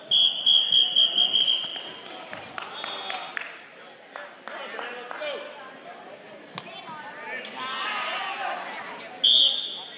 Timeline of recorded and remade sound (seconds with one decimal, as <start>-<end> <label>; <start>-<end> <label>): 0.0-10.0 recorded

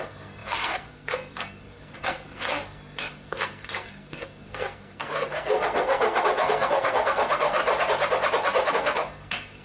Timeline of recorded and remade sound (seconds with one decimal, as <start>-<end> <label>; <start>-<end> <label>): 0.0-7.6 remade; 7.6-8.7 recorded; 8.7-9.6 remade

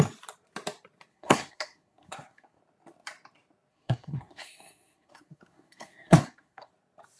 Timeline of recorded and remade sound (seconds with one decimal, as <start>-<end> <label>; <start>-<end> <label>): 0.0-1.1 recorded; 1.1-2.6 remade; 2.6-3.7 recorded; 3.7-6.7 remade; 6.7-7.2 recorded

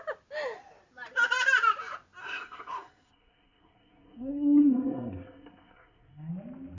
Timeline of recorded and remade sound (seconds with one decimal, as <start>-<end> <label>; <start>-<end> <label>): 0.0-2.2 recorded; 2.2-6.3 remade; 6.3-6.8 recorded